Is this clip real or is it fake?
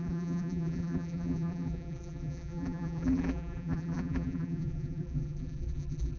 fake